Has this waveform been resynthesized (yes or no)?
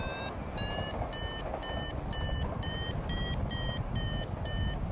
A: no